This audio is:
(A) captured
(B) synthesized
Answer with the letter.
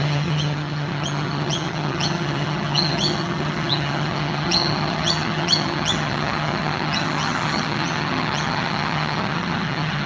B